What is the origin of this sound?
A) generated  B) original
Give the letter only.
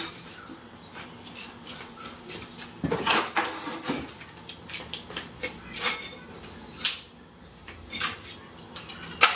B